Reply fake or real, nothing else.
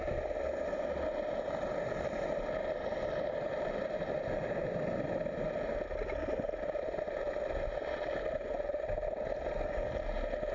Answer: real